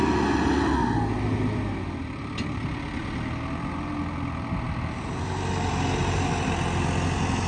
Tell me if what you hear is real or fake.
real